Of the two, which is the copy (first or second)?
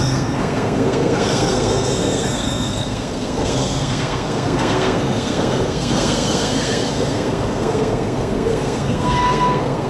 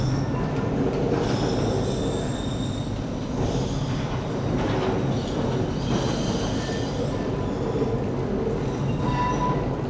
first